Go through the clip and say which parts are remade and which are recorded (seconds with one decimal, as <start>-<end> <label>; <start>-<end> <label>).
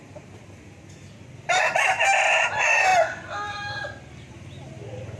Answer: 0.0-5.2 recorded